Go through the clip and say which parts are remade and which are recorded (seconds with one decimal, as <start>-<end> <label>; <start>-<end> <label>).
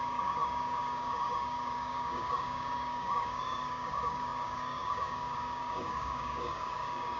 0.0-7.2 remade